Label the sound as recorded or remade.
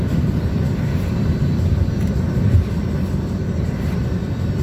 recorded